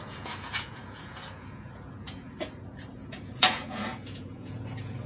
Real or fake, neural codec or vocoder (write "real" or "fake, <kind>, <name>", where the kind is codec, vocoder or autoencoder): fake, vocoder, Vocos